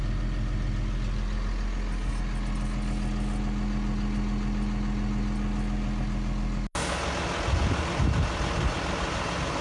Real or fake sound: real